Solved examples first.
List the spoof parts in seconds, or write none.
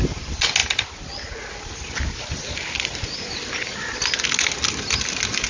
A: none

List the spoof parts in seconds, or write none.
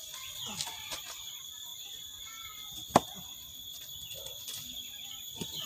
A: none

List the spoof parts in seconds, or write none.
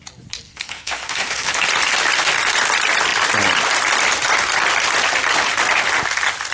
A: 0.5-1.5 (codec, SNAC)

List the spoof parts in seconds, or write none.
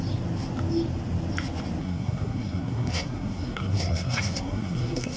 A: 1.8-5.2 (codec, SNAC)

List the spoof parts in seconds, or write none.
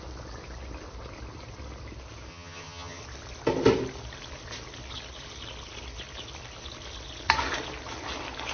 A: 2.3-3.0 (vocoder, HiFi-GAN)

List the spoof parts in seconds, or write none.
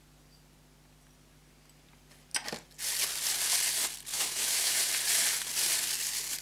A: 4.1-4.8 (autoencoder, DAC-VAE)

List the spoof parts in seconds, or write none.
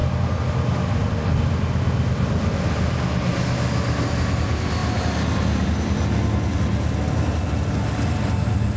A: none